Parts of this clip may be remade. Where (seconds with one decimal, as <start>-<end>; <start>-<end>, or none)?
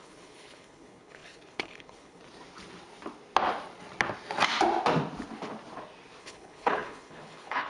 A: 0.0-2.2; 6.2-7.7